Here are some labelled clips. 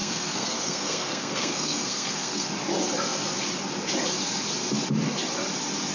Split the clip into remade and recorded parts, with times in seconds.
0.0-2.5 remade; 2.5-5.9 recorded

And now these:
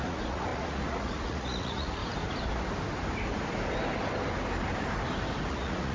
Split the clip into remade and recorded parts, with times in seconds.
0.0-2.0 remade; 2.0-5.5 recorded; 5.5-5.9 remade

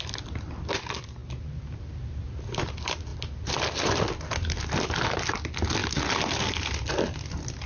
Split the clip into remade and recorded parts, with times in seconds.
0.0-3.1 recorded; 3.1-4.1 remade; 4.1-7.7 recorded

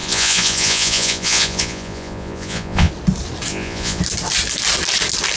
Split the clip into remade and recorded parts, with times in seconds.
0.0-2.9 remade; 2.9-3.5 recorded; 3.5-4.0 remade; 4.0-5.4 recorded